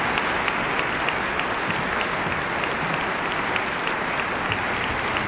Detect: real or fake real